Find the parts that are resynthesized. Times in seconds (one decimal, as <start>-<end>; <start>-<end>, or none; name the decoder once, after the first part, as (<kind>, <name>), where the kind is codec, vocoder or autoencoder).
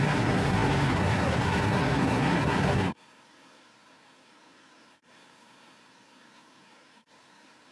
0.0-7.7 (codec, SNAC)